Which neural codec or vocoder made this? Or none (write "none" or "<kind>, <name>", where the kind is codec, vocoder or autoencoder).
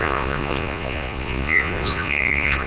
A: vocoder, Vocos